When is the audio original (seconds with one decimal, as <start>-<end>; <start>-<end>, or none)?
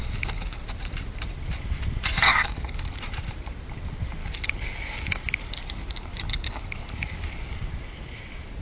0.6-2.3; 3.0-4.2; 7.7-8.6